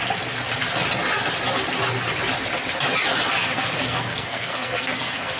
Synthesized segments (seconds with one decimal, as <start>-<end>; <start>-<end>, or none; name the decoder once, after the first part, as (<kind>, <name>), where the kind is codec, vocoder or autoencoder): 3.4-5.4 (codec, SNAC)